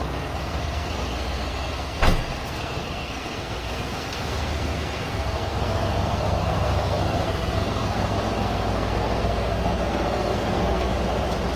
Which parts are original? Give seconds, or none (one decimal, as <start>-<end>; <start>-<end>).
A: 10.9-11.6

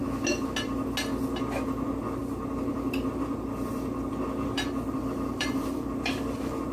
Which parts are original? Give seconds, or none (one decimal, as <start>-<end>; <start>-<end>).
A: 0.0-2.2; 6.2-6.7